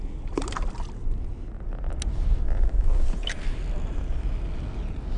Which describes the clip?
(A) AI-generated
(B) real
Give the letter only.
B